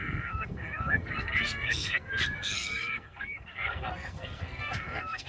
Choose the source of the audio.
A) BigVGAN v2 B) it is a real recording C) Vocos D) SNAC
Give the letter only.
D